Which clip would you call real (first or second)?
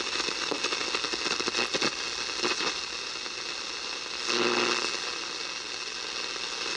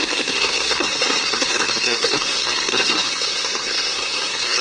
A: first